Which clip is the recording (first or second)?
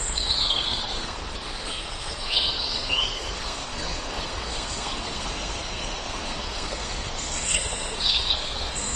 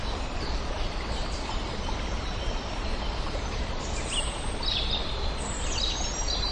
second